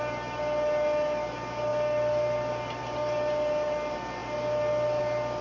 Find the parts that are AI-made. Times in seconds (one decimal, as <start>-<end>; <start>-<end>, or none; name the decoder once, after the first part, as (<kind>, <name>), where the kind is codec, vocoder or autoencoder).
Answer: none